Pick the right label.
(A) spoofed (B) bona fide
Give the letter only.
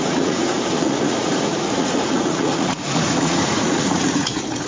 A